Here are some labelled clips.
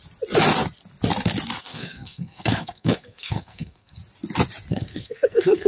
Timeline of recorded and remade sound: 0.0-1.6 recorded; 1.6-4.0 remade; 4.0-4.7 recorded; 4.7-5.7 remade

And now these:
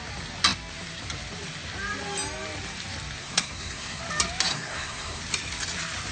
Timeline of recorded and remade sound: 0.0-3.2 recorded; 3.2-4.0 remade; 4.0-4.5 recorded; 4.5-5.2 remade; 5.2-6.1 recorded

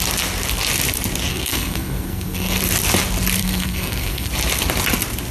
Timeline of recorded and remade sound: 0.0-1.3 recorded; 1.3-2.6 remade; 2.6-3.4 recorded; 3.4-4.3 remade; 4.3-5.3 recorded

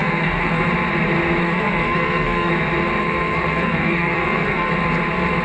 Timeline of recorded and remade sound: 0.0-0.7 remade; 0.7-1.4 recorded; 1.4-2.5 remade; 2.5-3.0 recorded; 3.0-4.7 remade; 4.7-5.4 recorded

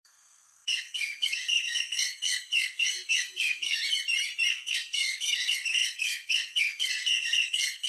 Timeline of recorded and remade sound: 0.0-3.8 remade; 3.8-4.5 recorded; 4.5-7.9 remade

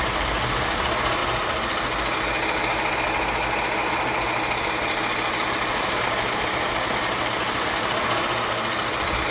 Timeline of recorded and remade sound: 0.0-9.3 recorded

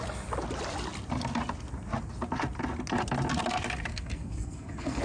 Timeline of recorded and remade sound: 0.0-3.9 recorded; 3.9-5.0 remade

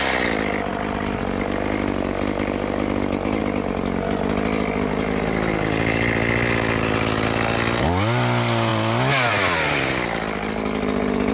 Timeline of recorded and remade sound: 0.0-11.3 recorded